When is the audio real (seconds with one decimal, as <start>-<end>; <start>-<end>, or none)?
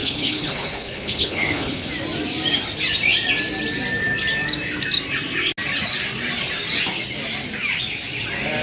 1.9-8.6